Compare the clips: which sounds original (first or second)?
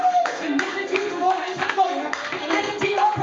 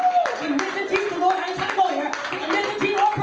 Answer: second